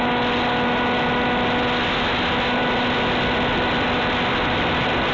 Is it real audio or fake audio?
real